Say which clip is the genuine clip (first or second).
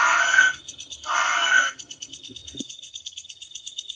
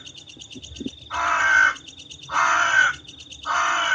second